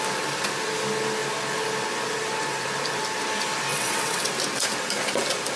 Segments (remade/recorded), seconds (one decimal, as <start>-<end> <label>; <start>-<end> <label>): 0.0-3.7 recorded; 3.7-4.3 remade; 4.3-5.6 recorded